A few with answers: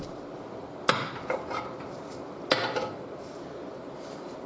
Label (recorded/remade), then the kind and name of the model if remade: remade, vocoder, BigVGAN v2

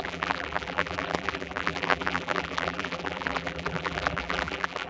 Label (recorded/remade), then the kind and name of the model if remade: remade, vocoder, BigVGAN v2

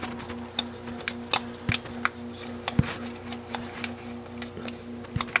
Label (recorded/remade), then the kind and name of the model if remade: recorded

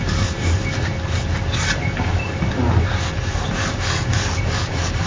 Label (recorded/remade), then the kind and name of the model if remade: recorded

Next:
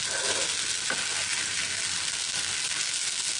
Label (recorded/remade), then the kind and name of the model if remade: recorded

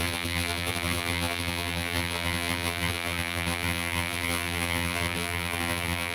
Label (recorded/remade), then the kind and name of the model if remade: remade, vocoder, BigVGAN v2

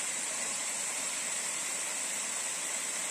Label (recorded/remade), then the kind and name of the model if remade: remade, vocoder, BigVGAN v2